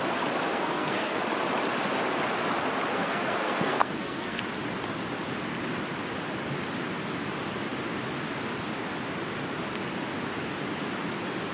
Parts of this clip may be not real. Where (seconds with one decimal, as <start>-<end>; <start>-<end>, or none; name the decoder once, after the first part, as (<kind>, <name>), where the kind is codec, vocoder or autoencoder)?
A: 0.5-1.2 (codec, SNAC); 2.9-4.4